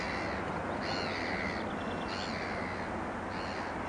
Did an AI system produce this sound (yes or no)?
no